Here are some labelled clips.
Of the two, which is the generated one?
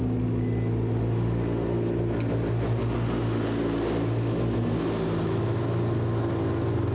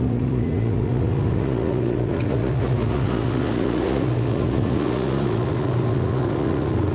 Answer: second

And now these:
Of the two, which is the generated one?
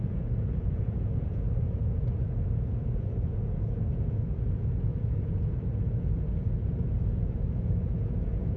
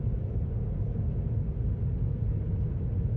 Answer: first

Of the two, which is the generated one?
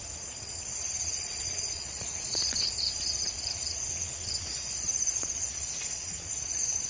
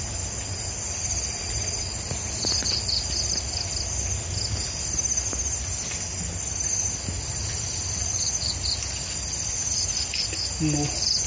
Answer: first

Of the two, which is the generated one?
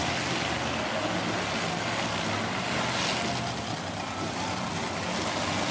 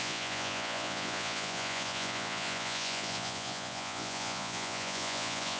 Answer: second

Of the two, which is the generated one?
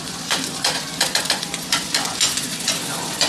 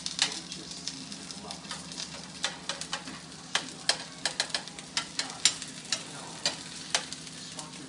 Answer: first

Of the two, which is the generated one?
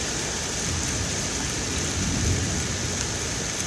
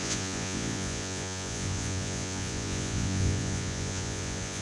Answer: second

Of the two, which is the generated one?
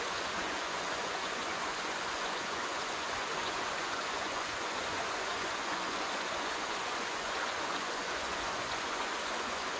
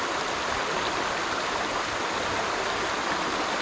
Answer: first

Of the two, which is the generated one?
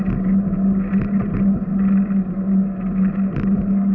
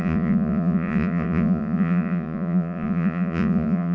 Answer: second